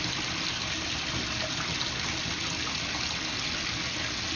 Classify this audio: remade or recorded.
recorded